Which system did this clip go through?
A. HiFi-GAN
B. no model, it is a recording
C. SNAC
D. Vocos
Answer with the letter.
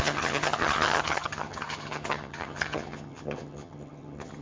A